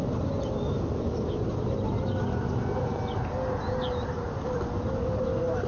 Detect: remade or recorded recorded